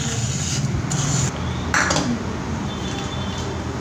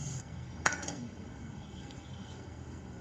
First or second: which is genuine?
first